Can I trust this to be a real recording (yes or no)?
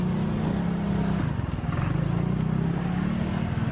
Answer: yes